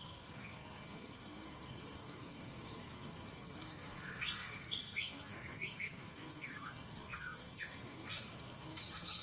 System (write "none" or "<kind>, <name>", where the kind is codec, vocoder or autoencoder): codec, SNAC